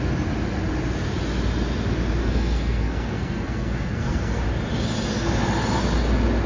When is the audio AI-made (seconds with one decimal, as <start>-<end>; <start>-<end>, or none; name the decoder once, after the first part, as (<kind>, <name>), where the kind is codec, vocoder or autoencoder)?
2.2-4.4 (codec, SNAC)